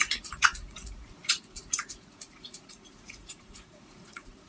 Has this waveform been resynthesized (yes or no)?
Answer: yes